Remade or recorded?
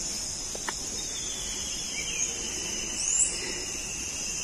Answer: recorded